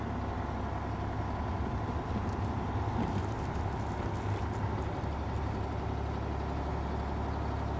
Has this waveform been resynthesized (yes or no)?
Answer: no